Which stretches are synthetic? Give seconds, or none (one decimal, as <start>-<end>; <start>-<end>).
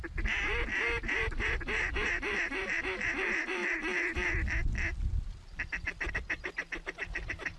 0.0-3.6